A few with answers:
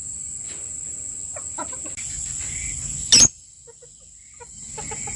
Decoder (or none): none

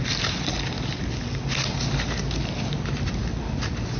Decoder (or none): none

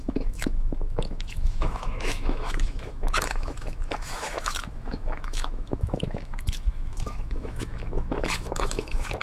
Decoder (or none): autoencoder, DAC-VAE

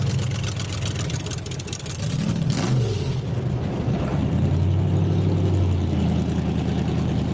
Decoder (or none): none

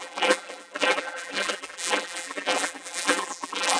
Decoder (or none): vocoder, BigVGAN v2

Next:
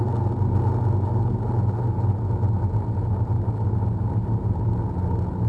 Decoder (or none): none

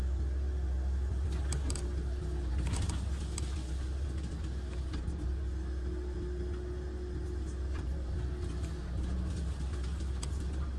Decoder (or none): none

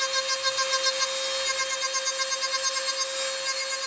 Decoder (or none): none